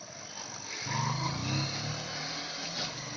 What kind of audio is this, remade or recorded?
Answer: recorded